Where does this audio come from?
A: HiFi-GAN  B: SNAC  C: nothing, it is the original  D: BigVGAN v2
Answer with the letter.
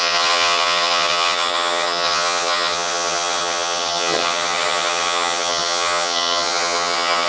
A